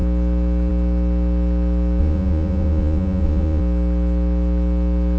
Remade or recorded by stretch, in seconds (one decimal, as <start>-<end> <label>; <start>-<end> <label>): 0.0-2.0 recorded; 2.0-3.6 remade; 3.6-5.2 recorded

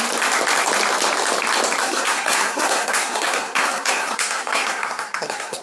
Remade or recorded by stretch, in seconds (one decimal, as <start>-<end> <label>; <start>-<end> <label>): 0.0-1.8 recorded; 1.8-5.6 remade